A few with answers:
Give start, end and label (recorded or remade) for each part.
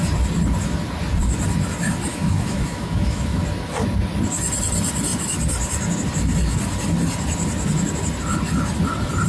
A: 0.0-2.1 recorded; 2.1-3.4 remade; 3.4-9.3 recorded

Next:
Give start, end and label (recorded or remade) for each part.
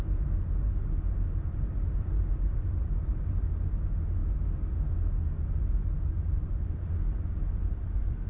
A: 0.0-1.5 recorded; 1.5-3.4 remade; 3.4-8.3 recorded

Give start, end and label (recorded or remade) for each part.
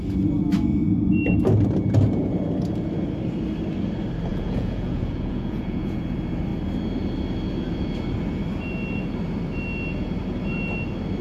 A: 0.0-4.3 recorded; 4.3-6.0 remade; 6.0-11.2 recorded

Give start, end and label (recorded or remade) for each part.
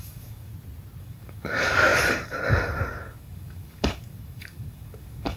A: 0.0-0.5 remade; 0.5-1.0 recorded; 1.0-5.4 remade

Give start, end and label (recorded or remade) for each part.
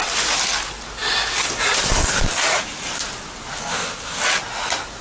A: 0.0-3.6 recorded; 3.6-4.2 remade; 4.2-5.0 recorded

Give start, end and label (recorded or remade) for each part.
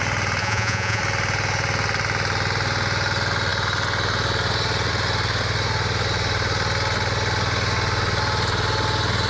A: 0.0-0.4 recorded; 0.4-1.0 remade; 1.0-9.3 recorded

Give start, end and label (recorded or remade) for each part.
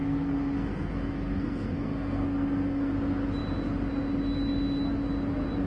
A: 0.0-2.9 remade; 2.9-5.7 recorded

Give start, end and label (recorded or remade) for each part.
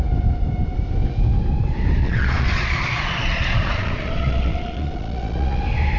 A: 0.0-2.0 recorded; 2.0-5.6 remade; 5.6-6.0 recorded